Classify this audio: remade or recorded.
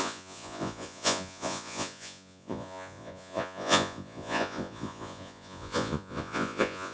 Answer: remade